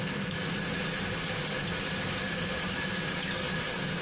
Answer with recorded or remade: recorded